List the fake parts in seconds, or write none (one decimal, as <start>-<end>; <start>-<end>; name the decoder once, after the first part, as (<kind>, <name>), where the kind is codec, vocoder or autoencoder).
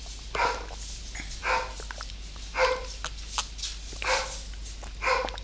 none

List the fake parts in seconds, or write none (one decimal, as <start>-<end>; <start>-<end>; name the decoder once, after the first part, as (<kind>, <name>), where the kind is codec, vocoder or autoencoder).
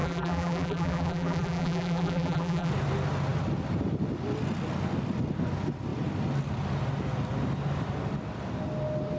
0.0-2.7 (vocoder, BigVGAN v2)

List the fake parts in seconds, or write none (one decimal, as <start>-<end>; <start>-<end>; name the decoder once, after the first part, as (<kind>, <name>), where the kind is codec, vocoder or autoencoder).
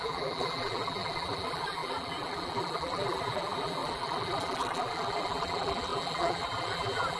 0.0-7.2 (vocoder, BigVGAN v2)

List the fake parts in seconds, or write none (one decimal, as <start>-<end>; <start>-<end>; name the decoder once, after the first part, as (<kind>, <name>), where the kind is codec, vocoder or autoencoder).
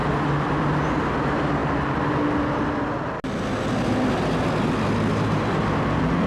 none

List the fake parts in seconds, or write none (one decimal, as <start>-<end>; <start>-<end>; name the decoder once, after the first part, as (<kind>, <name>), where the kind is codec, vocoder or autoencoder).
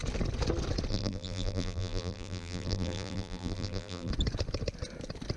0.9-4.1 (vocoder, BigVGAN v2)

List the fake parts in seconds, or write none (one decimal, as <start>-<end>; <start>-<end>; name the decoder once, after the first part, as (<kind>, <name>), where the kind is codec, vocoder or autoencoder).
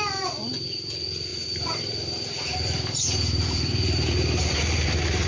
1.3-4.5 (vocoder, BigVGAN v2)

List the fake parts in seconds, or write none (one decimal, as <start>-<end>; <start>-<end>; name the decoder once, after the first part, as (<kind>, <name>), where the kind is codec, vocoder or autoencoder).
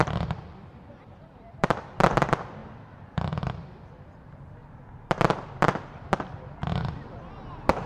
0.0-7.9 (vocoder, BigVGAN v2)